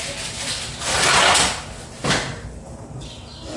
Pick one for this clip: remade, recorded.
recorded